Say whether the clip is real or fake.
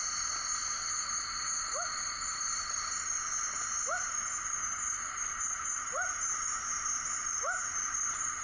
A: fake